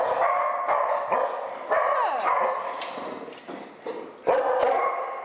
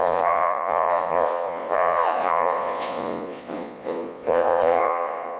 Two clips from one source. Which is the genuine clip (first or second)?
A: first